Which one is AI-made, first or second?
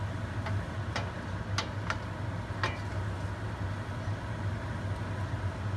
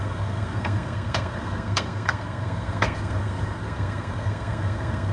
second